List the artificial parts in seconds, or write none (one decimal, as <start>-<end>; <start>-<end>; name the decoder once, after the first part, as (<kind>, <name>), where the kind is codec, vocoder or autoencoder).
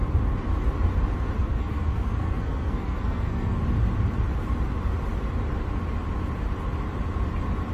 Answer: 1.4-3.6 (codec, SNAC)